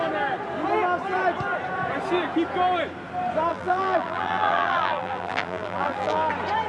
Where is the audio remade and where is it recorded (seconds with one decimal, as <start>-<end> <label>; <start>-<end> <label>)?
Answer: 0.0-3.5 recorded; 3.5-6.3 remade; 6.3-6.7 recorded